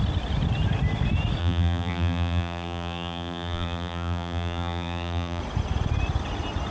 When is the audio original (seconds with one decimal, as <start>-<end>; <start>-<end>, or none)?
0.0-1.4; 5.4-6.7